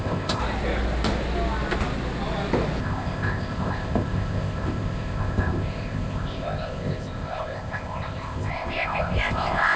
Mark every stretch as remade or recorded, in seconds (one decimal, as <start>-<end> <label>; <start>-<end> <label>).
0.0-0.4 remade; 0.4-2.8 recorded; 2.8-9.8 remade